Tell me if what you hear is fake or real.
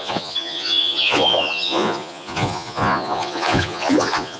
fake